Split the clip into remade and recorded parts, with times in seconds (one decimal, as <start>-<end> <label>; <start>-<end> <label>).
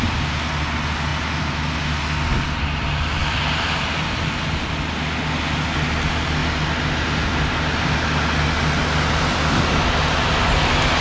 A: 0.0-11.0 recorded